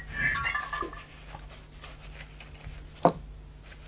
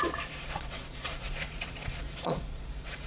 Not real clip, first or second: second